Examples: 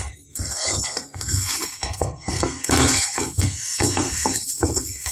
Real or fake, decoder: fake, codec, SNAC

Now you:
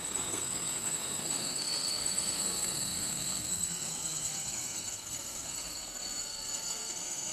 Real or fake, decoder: fake, codec, SNAC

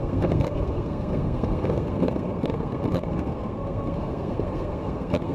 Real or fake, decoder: fake, codec, SNAC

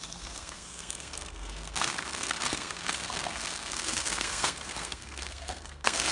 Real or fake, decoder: fake, codec, SNAC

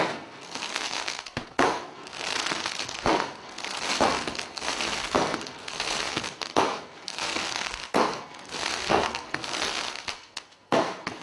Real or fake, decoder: fake, codec, SNAC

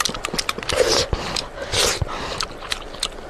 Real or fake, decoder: real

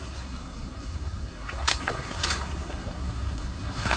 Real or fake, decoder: fake, codec, SNAC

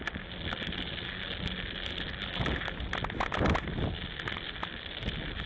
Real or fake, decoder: real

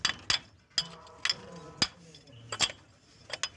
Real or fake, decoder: real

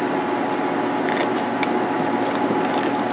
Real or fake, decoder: real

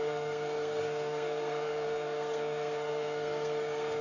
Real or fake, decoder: fake, codec, SNAC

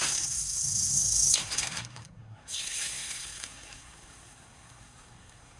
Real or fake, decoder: fake, codec, SNAC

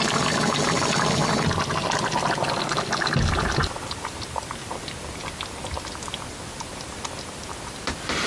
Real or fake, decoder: real